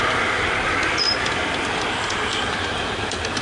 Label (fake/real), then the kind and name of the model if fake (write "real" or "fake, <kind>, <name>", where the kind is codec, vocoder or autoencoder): fake, vocoder, BigVGAN v2